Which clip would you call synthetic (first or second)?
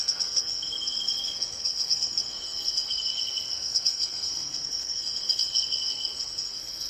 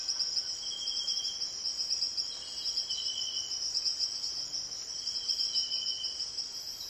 first